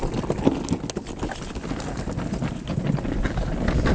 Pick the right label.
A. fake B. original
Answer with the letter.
B